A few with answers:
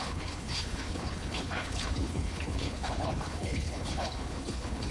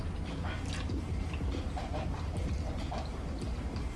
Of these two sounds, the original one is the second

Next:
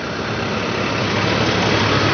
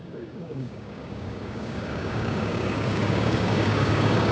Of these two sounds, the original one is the first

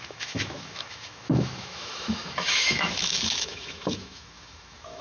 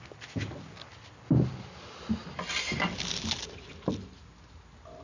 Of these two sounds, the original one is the second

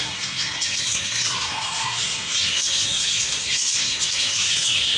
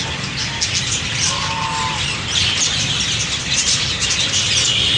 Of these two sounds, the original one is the second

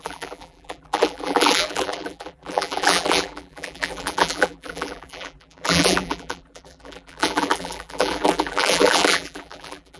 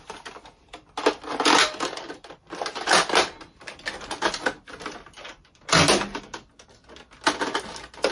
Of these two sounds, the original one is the second